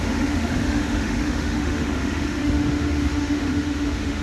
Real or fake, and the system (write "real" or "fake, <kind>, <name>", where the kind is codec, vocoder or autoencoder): fake, autoencoder, DAC-VAE